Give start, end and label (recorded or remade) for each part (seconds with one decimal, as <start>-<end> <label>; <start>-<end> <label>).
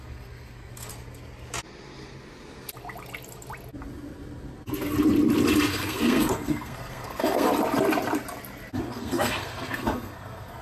0.0-0.9 remade; 0.9-5.7 recorded; 5.7-7.5 remade; 7.5-8.8 recorded; 8.8-10.6 remade